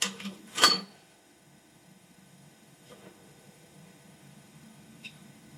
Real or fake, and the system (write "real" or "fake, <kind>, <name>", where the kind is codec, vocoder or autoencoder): fake, autoencoder, DAC-VAE